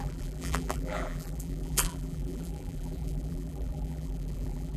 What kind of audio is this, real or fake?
fake